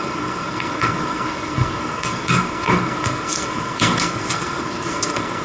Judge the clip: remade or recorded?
remade